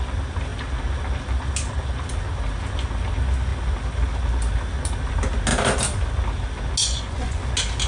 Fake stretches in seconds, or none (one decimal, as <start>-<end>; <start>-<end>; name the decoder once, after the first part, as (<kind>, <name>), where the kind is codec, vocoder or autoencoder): 6.8-7.4 (vocoder, Vocos)